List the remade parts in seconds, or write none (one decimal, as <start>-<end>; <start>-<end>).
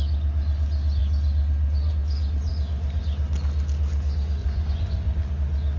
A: 4.4-5.3